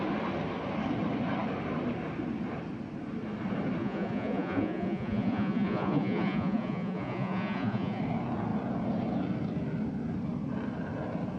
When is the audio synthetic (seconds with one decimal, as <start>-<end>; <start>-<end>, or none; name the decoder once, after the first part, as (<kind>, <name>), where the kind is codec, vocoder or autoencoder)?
3.8-8.0 (vocoder, Vocos)